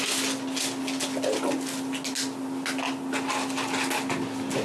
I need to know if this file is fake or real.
real